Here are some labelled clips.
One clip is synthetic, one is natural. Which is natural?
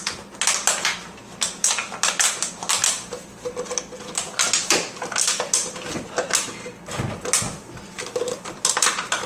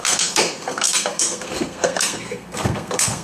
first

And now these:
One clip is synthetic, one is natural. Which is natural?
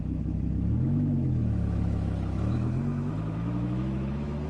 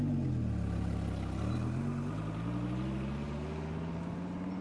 second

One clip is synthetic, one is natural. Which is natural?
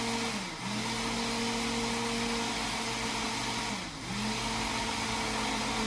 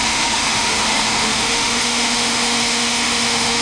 first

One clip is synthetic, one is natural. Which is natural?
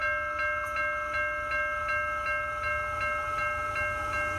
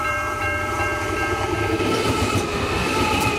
first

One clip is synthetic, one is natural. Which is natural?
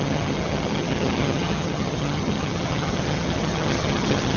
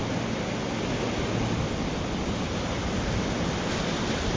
second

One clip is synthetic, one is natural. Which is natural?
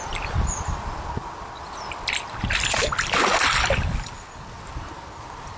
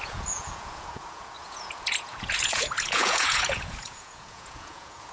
first